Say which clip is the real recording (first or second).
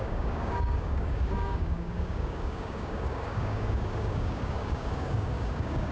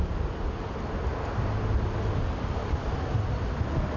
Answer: second